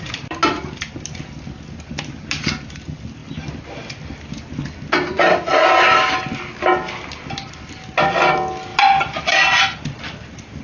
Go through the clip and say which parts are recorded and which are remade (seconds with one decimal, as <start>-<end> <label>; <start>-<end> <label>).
0.0-10.6 recorded